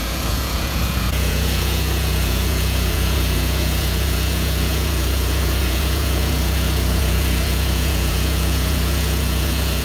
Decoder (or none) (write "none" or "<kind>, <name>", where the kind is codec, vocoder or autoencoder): vocoder, Vocos